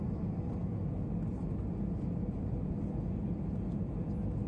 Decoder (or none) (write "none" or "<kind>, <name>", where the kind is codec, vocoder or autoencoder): none